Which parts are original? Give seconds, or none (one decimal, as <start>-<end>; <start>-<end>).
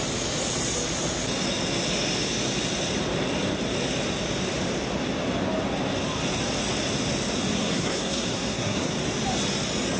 0.0-7.5; 8.9-10.0